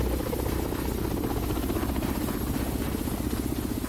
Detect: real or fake real